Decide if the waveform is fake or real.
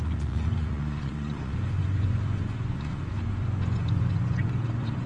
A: fake